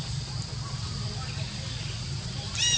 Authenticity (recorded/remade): recorded